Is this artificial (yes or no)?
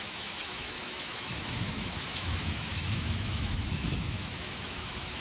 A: yes